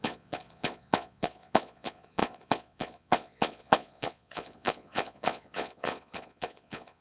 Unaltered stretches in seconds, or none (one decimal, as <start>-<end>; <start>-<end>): none